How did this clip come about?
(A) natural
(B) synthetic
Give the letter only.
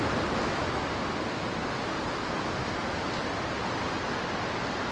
A